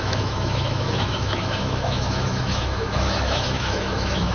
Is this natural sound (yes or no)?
no